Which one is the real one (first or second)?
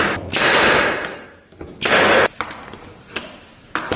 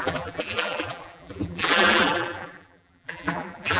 first